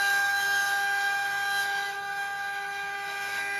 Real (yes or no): no